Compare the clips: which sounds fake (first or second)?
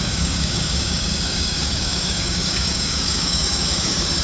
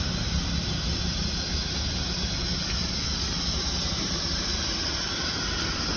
first